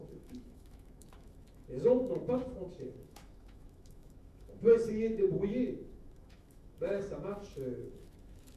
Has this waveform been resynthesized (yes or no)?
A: yes